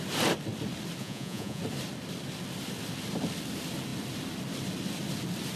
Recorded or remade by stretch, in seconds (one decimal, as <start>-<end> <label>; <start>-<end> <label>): 0.0-1.0 recorded; 1.0-1.6 remade; 1.6-5.6 recorded